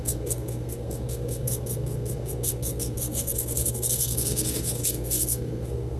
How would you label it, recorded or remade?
remade